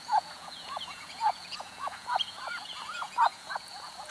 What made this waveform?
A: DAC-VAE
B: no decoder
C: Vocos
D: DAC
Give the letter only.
C